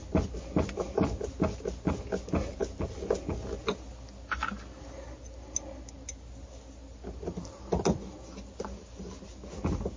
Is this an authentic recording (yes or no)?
yes